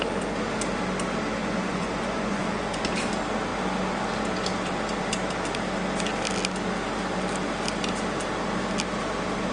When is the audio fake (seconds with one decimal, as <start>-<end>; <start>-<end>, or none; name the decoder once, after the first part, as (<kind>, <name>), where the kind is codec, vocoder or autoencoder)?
1.4-2.8 (vocoder, Vocos)